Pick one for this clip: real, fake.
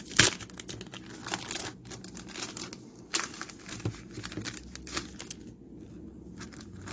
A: real